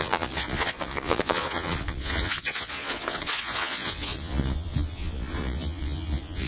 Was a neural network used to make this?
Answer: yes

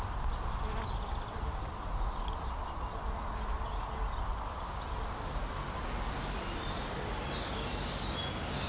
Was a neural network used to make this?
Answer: no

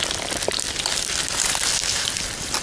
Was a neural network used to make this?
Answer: no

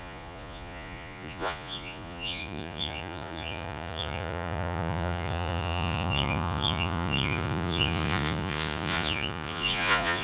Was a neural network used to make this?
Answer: yes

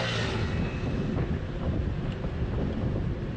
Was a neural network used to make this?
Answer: no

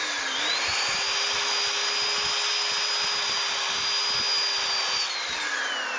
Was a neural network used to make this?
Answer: no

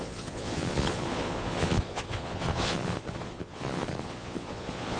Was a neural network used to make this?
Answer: yes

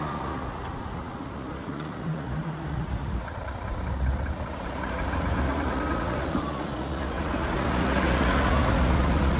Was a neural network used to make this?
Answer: yes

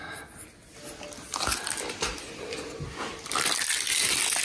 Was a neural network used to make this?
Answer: no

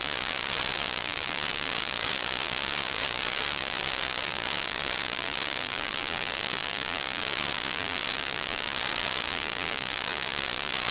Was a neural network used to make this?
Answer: yes